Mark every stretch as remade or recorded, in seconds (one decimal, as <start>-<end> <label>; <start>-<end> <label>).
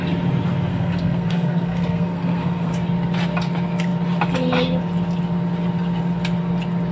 0.0-0.7 recorded; 0.7-2.7 remade; 2.7-6.9 recorded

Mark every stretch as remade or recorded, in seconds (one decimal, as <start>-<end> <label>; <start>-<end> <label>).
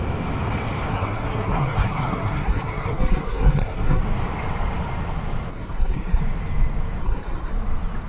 0.0-0.9 recorded; 0.9-4.0 remade; 4.0-5.5 recorded; 5.5-6.2 remade; 6.2-7.0 recorded; 7.0-7.5 remade; 7.5-8.1 recorded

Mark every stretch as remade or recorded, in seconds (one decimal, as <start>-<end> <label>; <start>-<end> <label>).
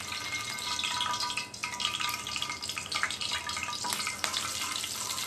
0.0-5.3 recorded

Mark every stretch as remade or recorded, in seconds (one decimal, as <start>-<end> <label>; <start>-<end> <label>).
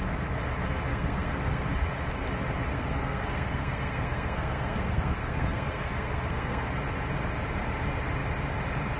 0.0-0.9 recorded; 0.9-1.6 remade; 1.6-2.7 recorded; 2.7-6.8 remade; 6.8-9.0 recorded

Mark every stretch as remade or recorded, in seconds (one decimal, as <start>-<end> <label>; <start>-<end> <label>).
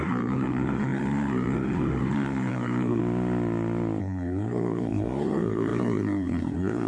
0.0-3.0 remade; 3.0-4.0 recorded; 4.0-6.9 remade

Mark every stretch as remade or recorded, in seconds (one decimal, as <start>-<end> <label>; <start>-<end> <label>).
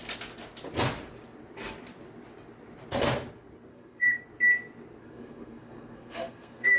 0.0-3.7 recorded; 3.7-4.2 remade; 4.2-5.0 recorded; 5.0-6.8 remade